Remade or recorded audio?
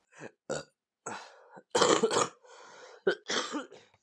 recorded